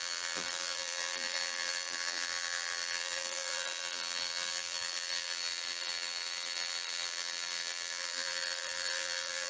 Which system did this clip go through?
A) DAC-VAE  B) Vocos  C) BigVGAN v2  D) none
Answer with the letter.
C